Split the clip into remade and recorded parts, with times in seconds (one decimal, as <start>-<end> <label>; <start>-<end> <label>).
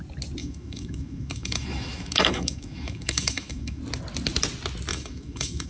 0.0-0.4 recorded; 0.4-3.8 remade; 3.8-4.9 recorded; 4.9-5.7 remade